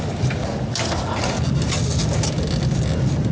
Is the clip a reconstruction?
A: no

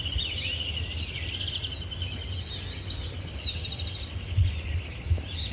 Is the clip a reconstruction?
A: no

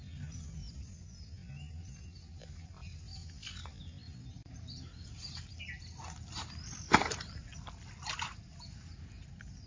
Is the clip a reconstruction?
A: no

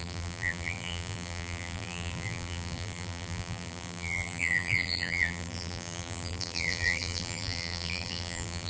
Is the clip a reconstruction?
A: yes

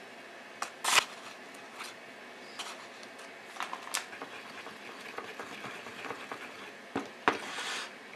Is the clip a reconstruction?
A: no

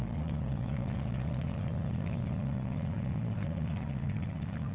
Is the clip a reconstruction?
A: yes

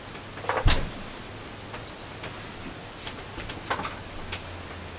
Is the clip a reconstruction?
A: no